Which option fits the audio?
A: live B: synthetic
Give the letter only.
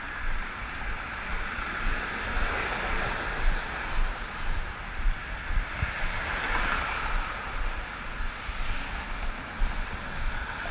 A